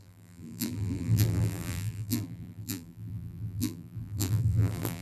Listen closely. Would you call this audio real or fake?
fake